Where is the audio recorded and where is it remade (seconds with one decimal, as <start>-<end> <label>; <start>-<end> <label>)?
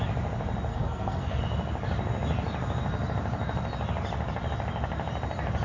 0.0-0.7 recorded; 0.7-1.4 remade; 1.4-5.6 recorded